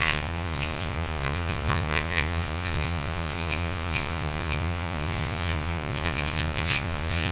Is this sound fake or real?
fake